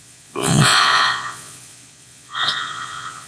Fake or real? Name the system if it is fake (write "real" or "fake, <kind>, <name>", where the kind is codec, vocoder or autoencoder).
fake, vocoder, Vocos